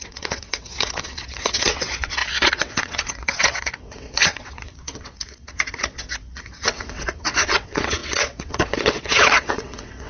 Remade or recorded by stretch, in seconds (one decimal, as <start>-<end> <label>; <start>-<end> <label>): 0.0-10.1 remade